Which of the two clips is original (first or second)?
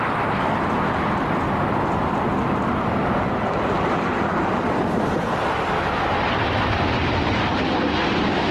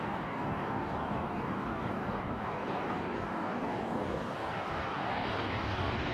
first